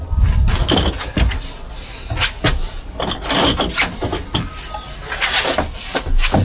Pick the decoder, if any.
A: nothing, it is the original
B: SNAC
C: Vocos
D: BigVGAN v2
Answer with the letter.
A